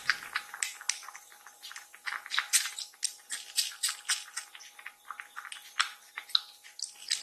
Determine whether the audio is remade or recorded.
recorded